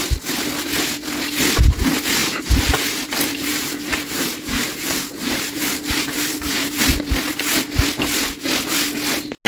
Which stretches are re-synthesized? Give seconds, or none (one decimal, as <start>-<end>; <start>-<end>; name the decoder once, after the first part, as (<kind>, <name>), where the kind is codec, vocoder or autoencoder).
2.2-6.8 (vocoder, BigVGAN v2)

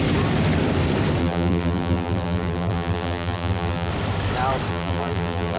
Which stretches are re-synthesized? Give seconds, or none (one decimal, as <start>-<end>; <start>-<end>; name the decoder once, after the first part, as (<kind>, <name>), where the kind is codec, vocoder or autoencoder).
1.2-3.9 (vocoder, BigVGAN v2); 4.7-5.6